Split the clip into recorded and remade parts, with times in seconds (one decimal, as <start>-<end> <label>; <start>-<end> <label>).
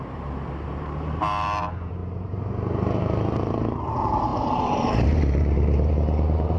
0.0-6.6 remade